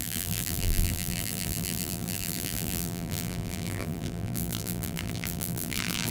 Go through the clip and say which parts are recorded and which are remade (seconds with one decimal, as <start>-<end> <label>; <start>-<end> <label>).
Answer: 0.0-6.1 remade